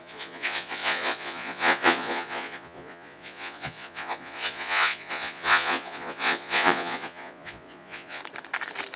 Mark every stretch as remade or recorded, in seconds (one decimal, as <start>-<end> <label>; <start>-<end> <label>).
0.0-8.2 remade; 8.2-9.0 recorded